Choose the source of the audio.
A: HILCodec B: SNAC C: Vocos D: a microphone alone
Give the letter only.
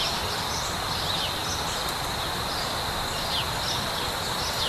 D